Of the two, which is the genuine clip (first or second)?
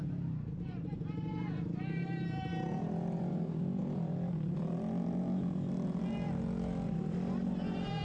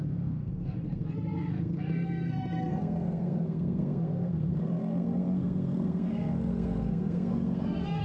first